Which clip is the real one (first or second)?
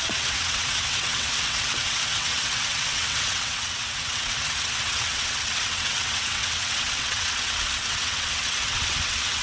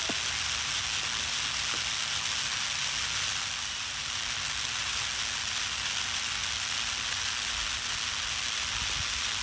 second